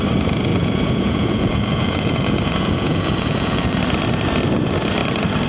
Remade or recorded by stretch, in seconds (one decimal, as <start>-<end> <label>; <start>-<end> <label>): 0.0-0.5 recorded; 0.5-3.8 remade; 3.8-5.5 recorded